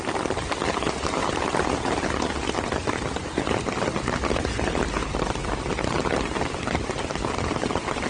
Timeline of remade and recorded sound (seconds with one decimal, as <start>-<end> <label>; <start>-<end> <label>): 0.0-8.1 recorded